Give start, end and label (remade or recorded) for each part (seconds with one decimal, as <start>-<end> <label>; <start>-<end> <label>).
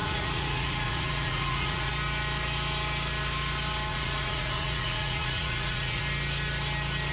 0.0-1.9 remade; 1.9-3.9 recorded; 3.9-6.0 remade; 6.0-7.1 recorded